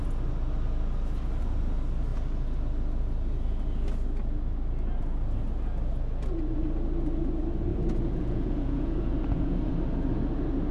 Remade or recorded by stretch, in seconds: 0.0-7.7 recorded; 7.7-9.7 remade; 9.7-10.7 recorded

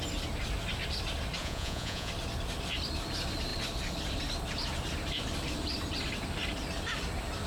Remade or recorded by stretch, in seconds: 0.0-1.4 recorded; 1.4-2.1 remade; 2.1-7.5 recorded

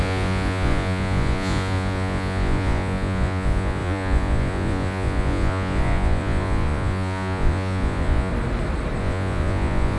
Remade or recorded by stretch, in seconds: 0.0-8.3 remade; 8.3-9.0 recorded; 9.0-10.0 remade

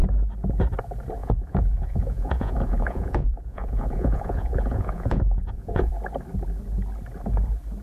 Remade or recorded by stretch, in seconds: 0.0-1.2 recorded; 1.2-5.9 remade; 5.9-7.8 recorded

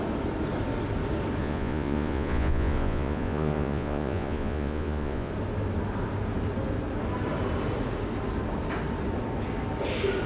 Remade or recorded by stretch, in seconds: 0.0-1.4 recorded; 1.4-5.3 remade; 5.3-10.3 recorded

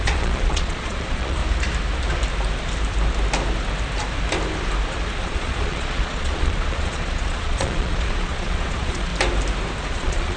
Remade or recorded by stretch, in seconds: 0.0-1.4 remade; 1.4-5.2 recorded; 5.2-9.1 remade; 9.1-9.8 recorded; 9.8-10.4 remade

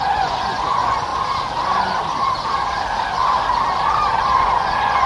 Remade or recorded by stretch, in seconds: 0.0-1.1 remade; 1.1-4.2 recorded; 4.2-5.1 remade